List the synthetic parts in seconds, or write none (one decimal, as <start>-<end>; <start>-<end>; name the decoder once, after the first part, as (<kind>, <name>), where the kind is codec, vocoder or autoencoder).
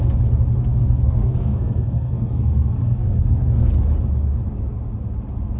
0.8-3.7 (codec, SNAC)